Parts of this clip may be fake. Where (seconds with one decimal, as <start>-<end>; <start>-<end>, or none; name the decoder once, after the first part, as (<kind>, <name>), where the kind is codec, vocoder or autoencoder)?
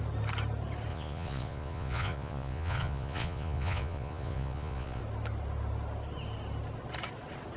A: 0.9-5.0 (vocoder, Vocos)